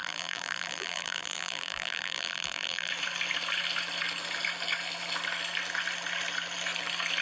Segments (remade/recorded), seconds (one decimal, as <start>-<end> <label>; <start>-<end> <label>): 0.0-2.9 remade; 2.9-7.2 recorded

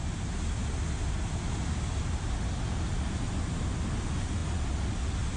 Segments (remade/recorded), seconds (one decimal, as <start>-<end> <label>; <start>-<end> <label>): 0.0-5.4 recorded

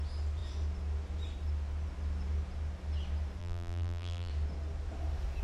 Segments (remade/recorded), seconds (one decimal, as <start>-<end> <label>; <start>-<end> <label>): 0.0-3.4 recorded; 3.4-4.3 remade; 4.3-5.4 recorded

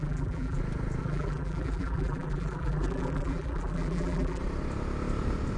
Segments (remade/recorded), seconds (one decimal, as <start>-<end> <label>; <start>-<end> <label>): 0.0-0.6 remade; 0.6-1.0 recorded; 1.0-4.4 remade; 4.4-5.6 recorded

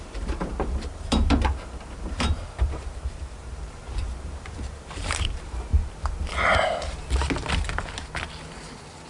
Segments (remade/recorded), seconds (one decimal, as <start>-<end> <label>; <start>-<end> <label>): 0.0-5.7 remade; 5.7-9.1 recorded

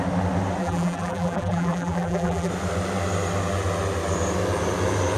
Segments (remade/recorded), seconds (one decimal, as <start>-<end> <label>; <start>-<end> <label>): 0.0-0.6 recorded; 0.6-2.5 remade; 2.5-5.2 recorded